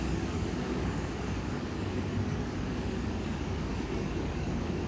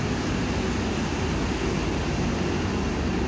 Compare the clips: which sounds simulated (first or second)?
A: first